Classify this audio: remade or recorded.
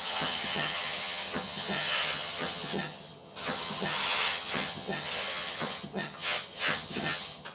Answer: remade